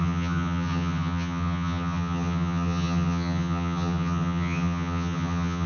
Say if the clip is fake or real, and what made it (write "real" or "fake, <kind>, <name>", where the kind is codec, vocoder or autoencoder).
fake, vocoder, HiFi-GAN